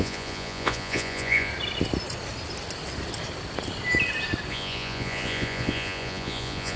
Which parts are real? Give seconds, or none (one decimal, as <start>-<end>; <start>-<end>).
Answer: 1.5-4.5